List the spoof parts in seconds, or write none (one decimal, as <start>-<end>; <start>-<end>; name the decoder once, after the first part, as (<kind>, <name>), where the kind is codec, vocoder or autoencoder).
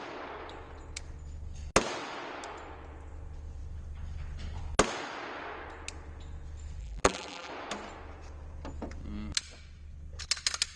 6.8-7.5 (vocoder, BigVGAN v2)